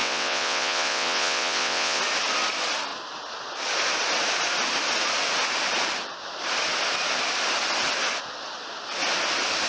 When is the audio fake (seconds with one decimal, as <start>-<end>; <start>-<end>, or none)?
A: 0.0-2.0